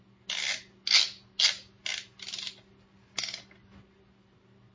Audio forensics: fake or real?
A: real